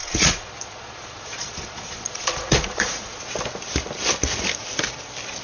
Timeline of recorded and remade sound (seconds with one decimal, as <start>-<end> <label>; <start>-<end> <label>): 0.0-3.2 remade; 3.2-5.4 recorded